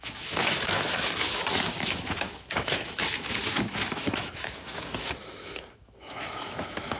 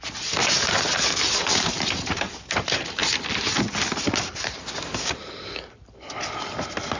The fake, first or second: first